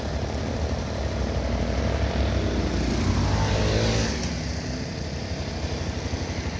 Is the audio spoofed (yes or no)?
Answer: no